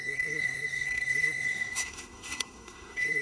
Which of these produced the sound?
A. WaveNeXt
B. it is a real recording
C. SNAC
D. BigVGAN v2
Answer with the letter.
C